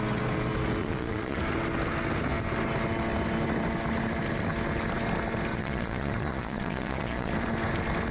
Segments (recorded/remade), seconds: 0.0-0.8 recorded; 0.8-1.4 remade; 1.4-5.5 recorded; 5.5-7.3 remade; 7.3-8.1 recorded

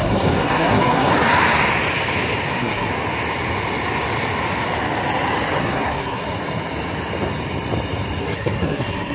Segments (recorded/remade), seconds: 0.0-1.1 remade; 1.1-2.5 recorded; 2.5-2.9 remade; 2.9-5.6 recorded; 5.6-6.2 remade; 6.2-8.2 recorded; 8.2-9.1 remade

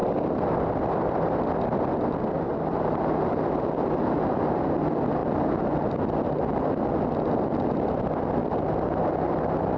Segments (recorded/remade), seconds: 0.0-5.2 recorded; 5.2-5.9 remade; 5.9-9.8 recorded

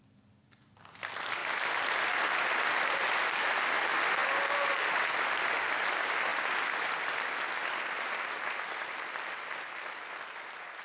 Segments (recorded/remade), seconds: 0.0-10.8 recorded

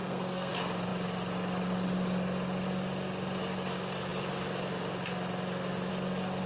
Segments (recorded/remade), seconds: 0.0-0.5 remade; 0.5-6.5 recorded

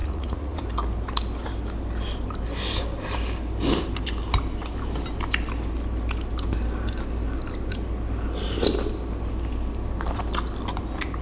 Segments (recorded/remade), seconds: 0.0-0.6 remade; 0.6-11.2 recorded

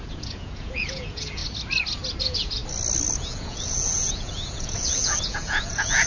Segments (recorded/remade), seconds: 0.0-1.4 remade; 1.4-2.2 recorded; 2.2-2.6 remade; 2.6-3.2 recorded; 3.2-6.1 remade